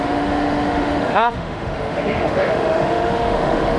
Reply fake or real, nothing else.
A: fake